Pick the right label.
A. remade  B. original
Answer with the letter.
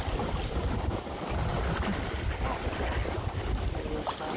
B